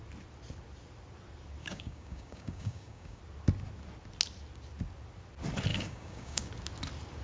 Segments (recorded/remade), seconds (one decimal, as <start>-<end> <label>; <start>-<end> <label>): 0.0-1.6 recorded; 1.6-3.2 remade; 3.2-5.7 recorded; 5.7-6.5 remade; 6.5-7.2 recorded